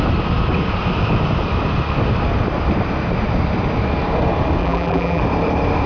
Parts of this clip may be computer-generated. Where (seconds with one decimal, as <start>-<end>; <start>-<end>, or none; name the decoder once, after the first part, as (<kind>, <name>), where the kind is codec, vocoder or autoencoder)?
4.6-5.2 (vocoder, BigVGAN v2)